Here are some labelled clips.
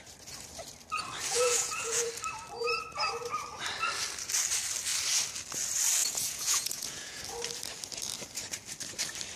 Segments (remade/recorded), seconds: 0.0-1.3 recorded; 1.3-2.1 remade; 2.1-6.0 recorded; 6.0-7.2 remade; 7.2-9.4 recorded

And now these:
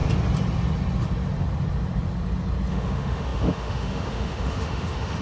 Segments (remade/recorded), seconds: 0.0-2.7 recorded; 2.7-5.2 remade

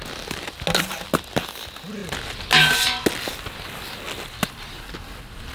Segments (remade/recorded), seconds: 0.0-5.5 recorded

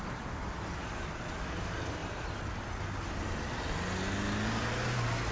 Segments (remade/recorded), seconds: 0.0-5.3 recorded

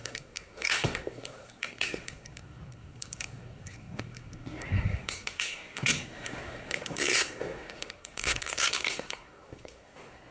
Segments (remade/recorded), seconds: 0.0-10.3 remade

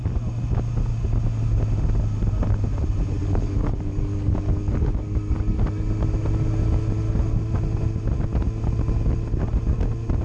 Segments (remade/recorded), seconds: 0.0-3.2 recorded; 3.2-5.6 remade; 5.6-10.2 recorded

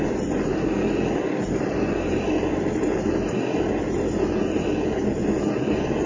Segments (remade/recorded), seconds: 0.0-3.7 remade; 3.7-6.1 recorded

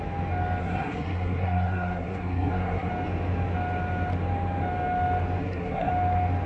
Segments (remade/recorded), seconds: 0.0-0.6 recorded; 0.6-2.9 remade; 2.9-5.4 recorded; 5.4-5.9 remade; 5.9-6.5 recorded